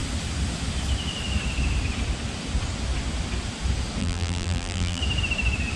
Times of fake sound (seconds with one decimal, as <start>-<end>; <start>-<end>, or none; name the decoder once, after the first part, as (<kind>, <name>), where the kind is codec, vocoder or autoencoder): 4.0-5.0 (vocoder, BigVGAN v2)

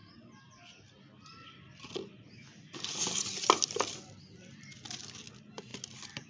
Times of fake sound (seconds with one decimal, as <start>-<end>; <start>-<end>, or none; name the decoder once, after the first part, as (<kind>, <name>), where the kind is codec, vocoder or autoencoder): none